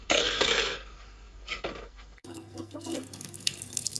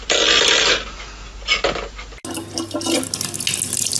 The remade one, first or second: first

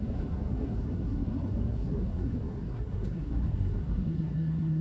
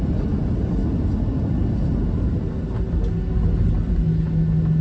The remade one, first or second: first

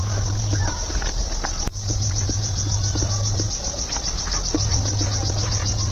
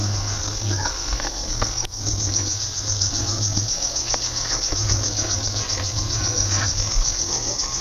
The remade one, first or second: second